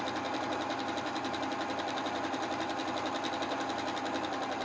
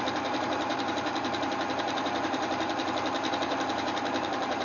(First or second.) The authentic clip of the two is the first